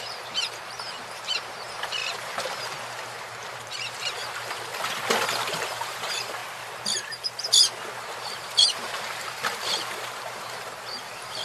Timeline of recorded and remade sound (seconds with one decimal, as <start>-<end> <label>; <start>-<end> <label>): 0.0-4.7 remade; 4.7-5.3 recorded; 5.3-6.4 remade; 6.4-7.9 recorded; 7.9-11.4 remade